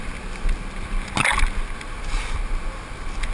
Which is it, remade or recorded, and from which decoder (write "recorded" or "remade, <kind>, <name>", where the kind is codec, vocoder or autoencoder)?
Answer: recorded